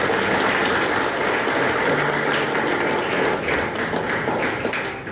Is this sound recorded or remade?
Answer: recorded